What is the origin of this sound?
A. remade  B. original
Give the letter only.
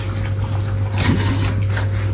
B